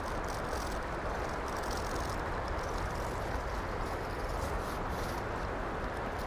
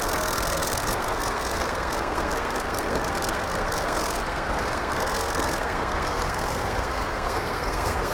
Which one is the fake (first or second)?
second